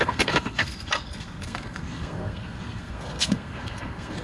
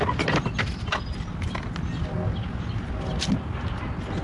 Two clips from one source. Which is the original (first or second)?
second